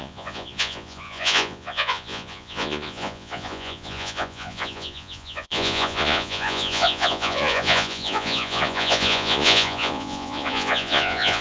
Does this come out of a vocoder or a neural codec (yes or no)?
yes